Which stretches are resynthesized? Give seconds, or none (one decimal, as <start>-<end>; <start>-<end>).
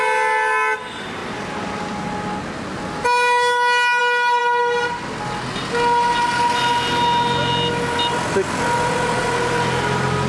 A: none